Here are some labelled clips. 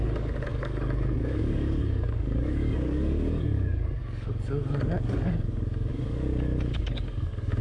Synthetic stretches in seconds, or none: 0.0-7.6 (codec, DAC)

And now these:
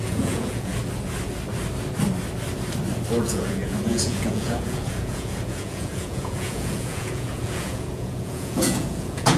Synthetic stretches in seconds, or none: 0.0-0.7 (vocoder, Vocos); 3.2-9.4

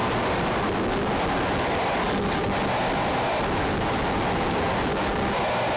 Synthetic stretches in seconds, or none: none

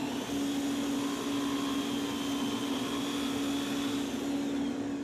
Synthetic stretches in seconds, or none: none

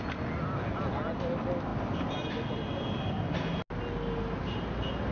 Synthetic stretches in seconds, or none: none

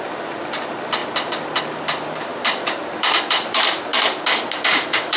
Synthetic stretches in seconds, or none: 0.0-1.0 (vocoder, BigVGAN v2); 1.6-3.9; 4.6-5.2